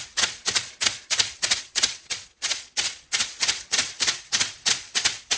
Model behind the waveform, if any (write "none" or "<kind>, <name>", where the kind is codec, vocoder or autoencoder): vocoder, Vocos